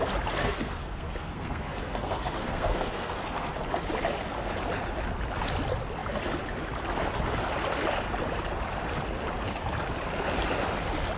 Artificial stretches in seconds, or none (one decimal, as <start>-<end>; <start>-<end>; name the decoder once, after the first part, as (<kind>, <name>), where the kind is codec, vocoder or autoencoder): 0.4-3.5 (codec, SNAC)

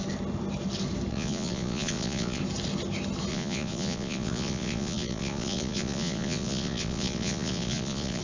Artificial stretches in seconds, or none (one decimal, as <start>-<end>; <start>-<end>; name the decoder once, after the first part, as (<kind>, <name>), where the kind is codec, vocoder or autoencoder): 1.1-2.4 (vocoder, Vocos); 3.3-8.2

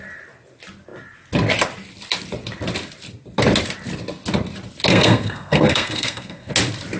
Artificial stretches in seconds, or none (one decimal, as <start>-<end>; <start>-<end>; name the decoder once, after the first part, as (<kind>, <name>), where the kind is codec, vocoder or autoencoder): 4.9-6.5 (codec, SNAC)

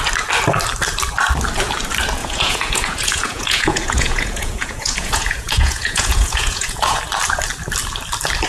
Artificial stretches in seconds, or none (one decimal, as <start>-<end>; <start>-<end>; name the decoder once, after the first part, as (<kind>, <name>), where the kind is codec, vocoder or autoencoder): 2.2-7.0 (vocoder, Vocos)

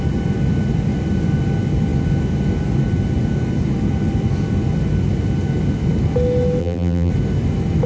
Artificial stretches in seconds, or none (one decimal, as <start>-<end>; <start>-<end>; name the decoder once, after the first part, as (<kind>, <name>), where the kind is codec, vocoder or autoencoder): 6.6-7.1 (vocoder, BigVGAN v2)

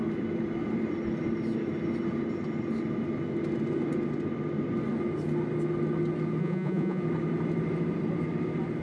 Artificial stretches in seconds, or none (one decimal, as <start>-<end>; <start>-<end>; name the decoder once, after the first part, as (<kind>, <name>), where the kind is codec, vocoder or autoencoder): 6.4-7.0 (vocoder, Vocos)